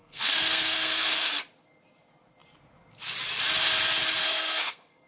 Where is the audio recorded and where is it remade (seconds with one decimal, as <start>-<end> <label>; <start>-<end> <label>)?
0.0-1.3 remade; 1.3-4.2 recorded; 4.2-5.1 remade